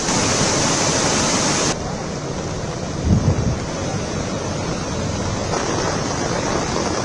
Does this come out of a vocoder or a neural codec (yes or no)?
no